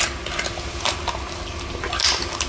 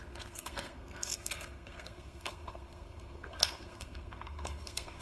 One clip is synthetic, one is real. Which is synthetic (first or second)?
second